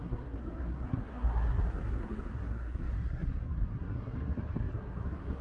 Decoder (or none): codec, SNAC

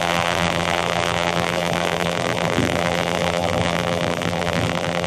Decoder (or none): vocoder, BigVGAN v2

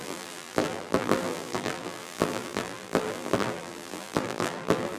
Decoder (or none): vocoder, BigVGAN v2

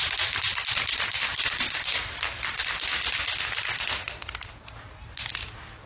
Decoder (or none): none